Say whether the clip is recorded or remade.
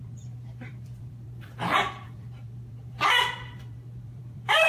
remade